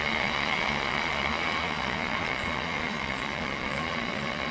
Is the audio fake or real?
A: fake